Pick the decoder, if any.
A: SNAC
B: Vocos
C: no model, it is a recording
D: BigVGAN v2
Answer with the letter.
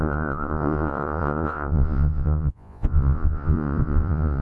B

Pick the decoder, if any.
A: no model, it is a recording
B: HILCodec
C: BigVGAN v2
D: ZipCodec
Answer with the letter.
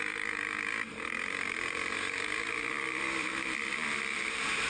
C